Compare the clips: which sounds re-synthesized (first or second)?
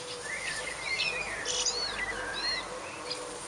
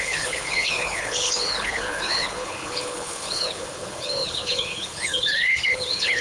second